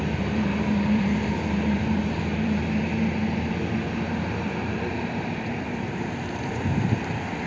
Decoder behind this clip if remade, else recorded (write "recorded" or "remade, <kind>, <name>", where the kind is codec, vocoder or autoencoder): remade, vocoder, BigVGAN v2